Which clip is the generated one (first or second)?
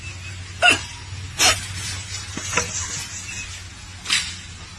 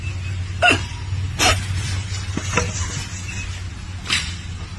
second